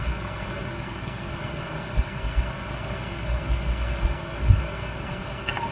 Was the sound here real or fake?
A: fake